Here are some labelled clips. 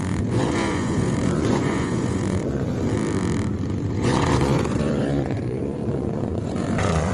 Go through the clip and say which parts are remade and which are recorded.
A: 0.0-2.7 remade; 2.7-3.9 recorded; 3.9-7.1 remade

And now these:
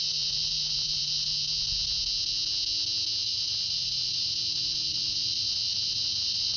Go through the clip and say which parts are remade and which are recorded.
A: 0.0-1.3 remade; 1.3-3.2 recorded; 3.2-6.6 remade